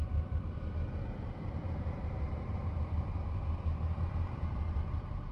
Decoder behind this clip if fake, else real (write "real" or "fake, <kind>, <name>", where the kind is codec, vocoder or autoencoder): fake, vocoder, BigVGAN v2